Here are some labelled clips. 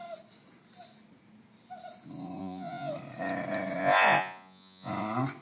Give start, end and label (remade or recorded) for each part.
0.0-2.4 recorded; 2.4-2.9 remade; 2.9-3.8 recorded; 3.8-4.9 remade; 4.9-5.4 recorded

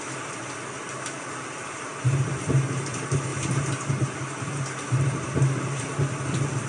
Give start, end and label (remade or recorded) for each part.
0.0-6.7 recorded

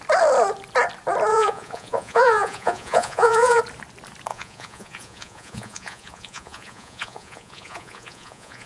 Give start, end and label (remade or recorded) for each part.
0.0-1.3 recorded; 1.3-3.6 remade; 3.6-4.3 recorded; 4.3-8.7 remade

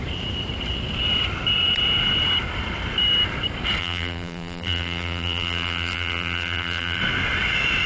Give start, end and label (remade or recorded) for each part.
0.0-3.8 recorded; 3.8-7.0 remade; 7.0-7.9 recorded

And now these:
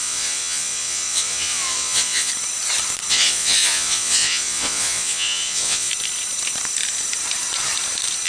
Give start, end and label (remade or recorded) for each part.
0.0-2.3 remade; 2.3-3.1 recorded; 3.1-5.9 remade; 5.9-8.3 recorded

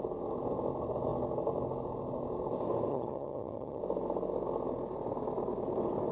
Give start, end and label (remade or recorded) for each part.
0.0-2.9 recorded; 2.9-3.8 remade; 3.8-6.1 recorded

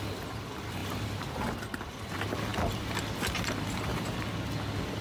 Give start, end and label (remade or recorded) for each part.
0.0-0.8 recorded; 0.8-1.5 remade; 1.5-5.0 recorded